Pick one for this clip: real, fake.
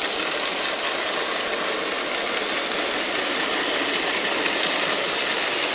real